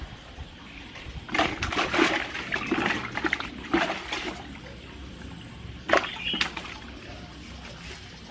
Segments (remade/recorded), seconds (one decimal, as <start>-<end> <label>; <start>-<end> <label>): 0.0-8.3 remade